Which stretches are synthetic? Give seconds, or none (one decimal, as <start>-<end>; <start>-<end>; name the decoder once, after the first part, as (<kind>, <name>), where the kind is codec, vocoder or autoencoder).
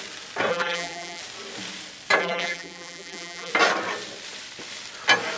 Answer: 0.5-1.2 (vocoder, BigVGAN v2); 2.2-3.5